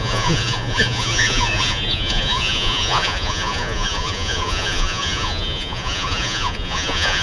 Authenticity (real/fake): fake